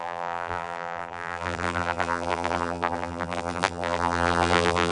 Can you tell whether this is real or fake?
fake